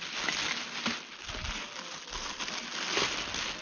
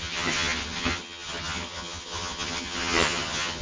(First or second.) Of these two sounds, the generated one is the second